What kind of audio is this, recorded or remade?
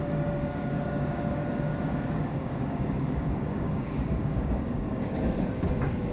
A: remade